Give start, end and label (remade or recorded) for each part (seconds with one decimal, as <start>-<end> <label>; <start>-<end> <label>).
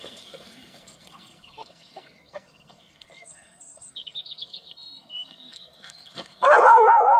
0.0-7.2 remade